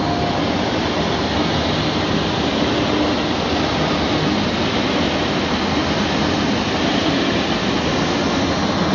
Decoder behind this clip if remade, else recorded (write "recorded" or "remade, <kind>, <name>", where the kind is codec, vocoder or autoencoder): recorded